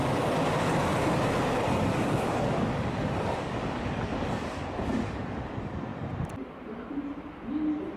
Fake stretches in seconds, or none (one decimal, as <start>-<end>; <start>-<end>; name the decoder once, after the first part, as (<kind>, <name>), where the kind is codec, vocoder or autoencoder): 1.9-5.4 (codec, DAC)